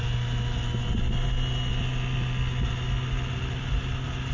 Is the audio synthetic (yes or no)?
no